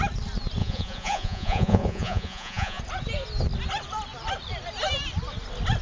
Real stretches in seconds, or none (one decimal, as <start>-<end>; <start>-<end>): 0.0-0.6; 2.8-5.8